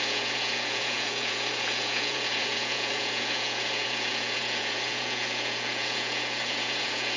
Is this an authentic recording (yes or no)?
no